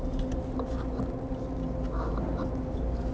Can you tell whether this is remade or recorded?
recorded